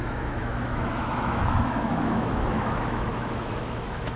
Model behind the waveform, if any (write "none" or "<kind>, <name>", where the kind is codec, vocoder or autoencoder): autoencoder, DAC-VAE